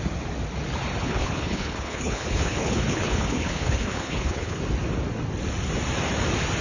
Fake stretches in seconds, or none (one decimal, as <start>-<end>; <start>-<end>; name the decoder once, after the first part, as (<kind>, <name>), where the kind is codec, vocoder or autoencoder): 1.0-4.6 (codec, HILCodec)